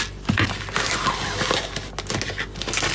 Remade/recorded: recorded